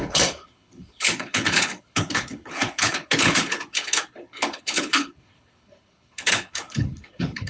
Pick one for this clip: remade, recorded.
remade